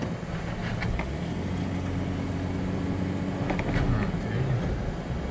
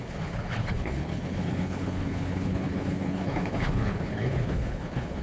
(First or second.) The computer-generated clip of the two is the second